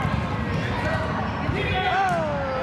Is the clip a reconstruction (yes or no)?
no